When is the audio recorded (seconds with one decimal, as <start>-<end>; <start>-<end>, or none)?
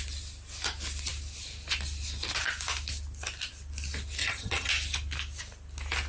0.0-4.2; 4.7-6.1